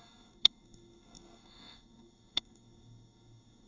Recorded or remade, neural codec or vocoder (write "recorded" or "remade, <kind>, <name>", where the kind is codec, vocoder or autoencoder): remade, codec, SNAC